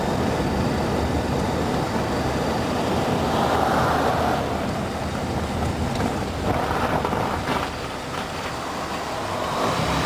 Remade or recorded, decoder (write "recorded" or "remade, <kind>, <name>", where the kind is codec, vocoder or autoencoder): recorded